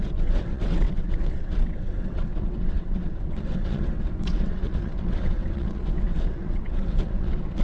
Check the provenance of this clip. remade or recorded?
remade